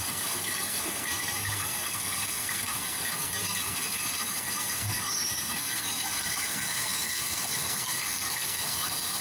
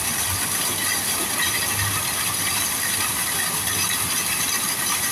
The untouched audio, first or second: second